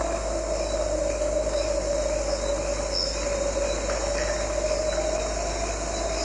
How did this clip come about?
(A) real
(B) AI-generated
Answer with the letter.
A